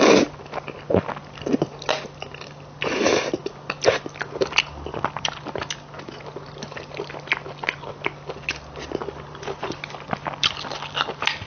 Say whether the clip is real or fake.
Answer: real